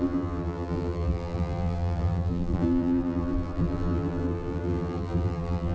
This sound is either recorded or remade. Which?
remade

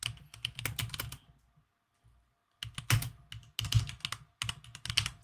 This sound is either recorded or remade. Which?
recorded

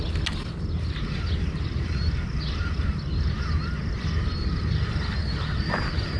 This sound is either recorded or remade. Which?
recorded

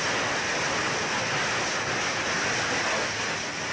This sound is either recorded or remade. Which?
recorded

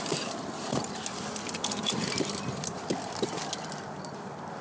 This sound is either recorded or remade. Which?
remade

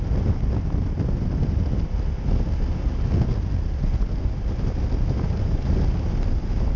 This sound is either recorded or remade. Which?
recorded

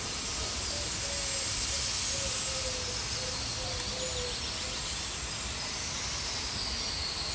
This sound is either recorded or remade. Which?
recorded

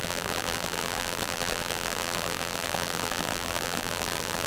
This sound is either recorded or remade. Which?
remade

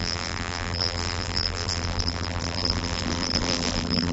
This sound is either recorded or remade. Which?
remade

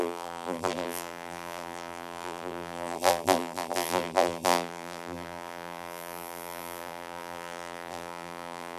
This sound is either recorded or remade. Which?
remade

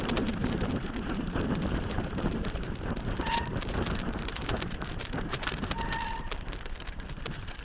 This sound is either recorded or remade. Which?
remade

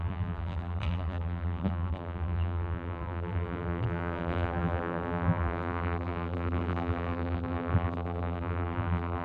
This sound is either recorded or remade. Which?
remade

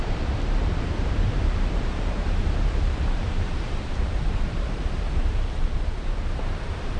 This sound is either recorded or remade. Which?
remade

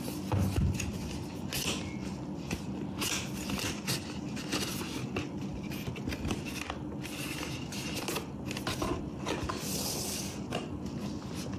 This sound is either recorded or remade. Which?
recorded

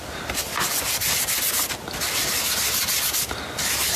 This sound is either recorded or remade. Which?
recorded